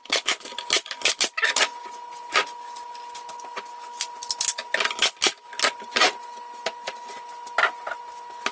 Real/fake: real